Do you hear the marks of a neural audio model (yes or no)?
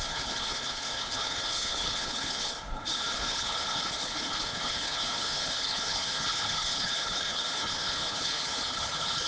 yes